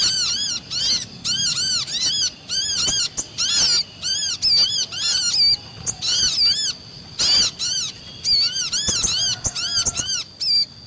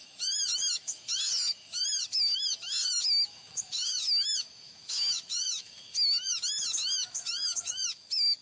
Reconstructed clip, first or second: second